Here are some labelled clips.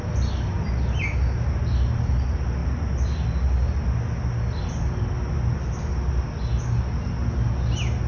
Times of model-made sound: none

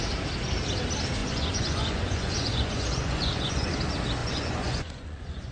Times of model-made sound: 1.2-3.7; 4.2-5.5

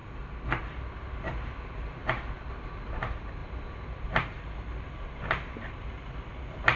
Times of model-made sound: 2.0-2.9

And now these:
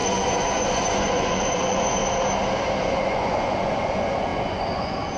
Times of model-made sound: 0.0-2.0; 2.8-5.2

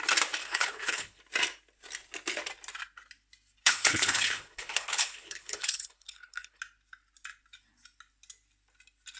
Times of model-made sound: 0.4-1.2; 3.6-6.6